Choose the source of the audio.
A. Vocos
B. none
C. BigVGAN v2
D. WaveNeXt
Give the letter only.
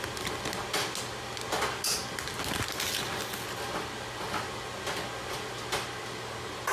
B